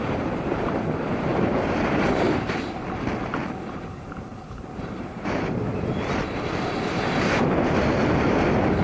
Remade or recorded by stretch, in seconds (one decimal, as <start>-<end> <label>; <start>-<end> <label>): 0.0-1.3 recorded; 1.3-2.2 remade; 2.2-4.3 recorded; 4.3-7.4 remade; 7.4-8.8 recorded